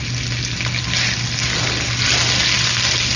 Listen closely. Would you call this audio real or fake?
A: real